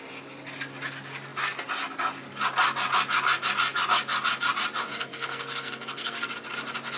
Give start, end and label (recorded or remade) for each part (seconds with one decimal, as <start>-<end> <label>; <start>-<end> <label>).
0.0-4.9 recorded; 4.9-6.3 remade; 6.3-7.0 recorded

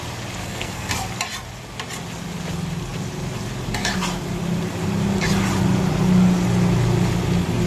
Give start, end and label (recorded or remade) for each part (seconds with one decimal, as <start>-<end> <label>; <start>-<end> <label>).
0.0-0.4 recorded; 0.4-0.9 remade; 0.9-7.7 recorded

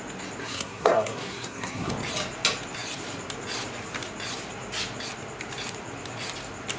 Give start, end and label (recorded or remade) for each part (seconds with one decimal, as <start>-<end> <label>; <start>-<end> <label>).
0.0-0.4 recorded; 0.4-1.9 remade; 1.9-6.8 recorded

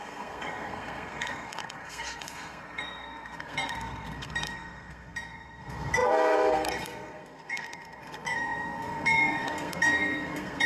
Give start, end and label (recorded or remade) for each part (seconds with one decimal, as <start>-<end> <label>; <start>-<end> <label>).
0.0-10.7 remade